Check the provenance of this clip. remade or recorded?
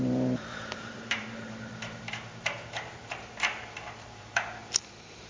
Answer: remade